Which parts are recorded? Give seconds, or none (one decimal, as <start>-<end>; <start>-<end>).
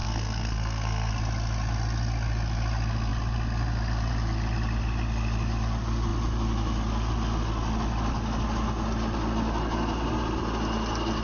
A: 1.1-11.2